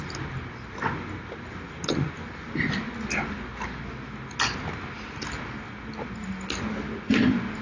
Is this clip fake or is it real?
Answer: real